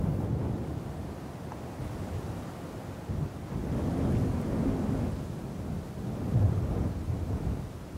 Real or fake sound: real